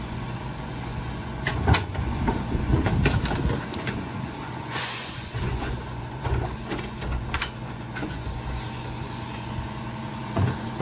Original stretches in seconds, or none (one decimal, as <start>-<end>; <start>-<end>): 2.9-3.6